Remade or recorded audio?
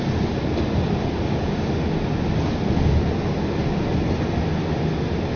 recorded